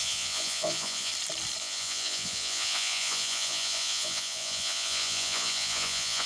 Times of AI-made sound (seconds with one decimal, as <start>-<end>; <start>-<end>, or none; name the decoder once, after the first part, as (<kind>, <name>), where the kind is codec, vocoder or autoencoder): 0.0-1.1 (vocoder, Vocos); 1.6-6.3